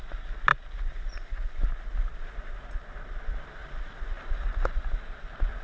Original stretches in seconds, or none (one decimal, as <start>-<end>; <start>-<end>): 0.0-5.6